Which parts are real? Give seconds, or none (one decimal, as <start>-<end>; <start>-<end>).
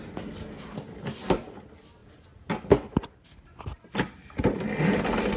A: 0.0-5.4